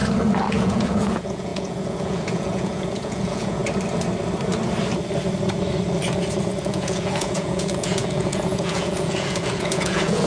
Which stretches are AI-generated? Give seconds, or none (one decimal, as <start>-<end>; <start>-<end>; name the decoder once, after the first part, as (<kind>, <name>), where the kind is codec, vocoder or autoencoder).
0.5-3.6 (vocoder, Vocos); 6.6-10.3